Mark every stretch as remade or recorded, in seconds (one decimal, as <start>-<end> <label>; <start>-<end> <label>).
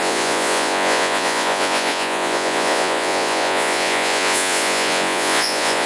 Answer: 0.0-5.9 remade